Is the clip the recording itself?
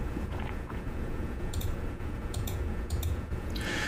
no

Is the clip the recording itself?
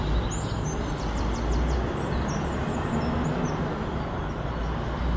yes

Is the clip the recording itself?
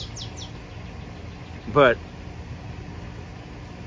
yes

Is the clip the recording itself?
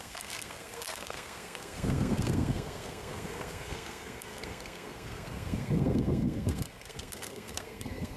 no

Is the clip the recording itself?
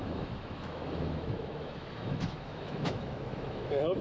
no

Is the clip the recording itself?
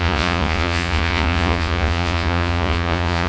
no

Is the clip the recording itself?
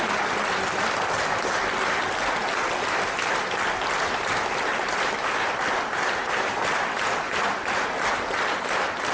yes